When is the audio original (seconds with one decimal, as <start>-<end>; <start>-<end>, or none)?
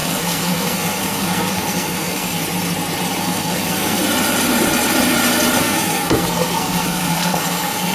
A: 2.4-3.2; 4.0-5.6